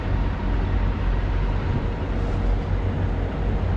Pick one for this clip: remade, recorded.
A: recorded